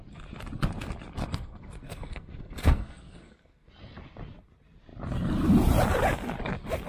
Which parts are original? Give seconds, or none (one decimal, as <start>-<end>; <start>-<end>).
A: 0.0-1.2; 3.7-6.9